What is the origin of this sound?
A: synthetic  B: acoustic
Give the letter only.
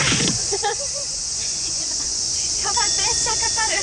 A